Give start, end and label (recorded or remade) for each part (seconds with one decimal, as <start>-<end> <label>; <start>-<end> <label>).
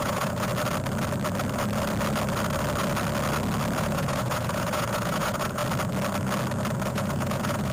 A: 0.0-0.5 remade; 0.5-3.8 recorded; 3.8-5.6 remade; 5.6-6.9 recorded; 6.9-7.7 remade